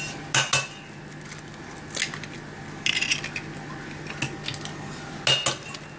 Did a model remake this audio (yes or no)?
no